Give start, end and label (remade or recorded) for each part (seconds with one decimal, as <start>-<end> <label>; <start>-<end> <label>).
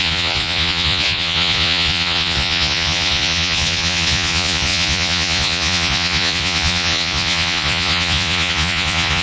0.0-9.2 remade